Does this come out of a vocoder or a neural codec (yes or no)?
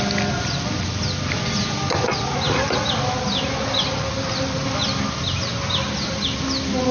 no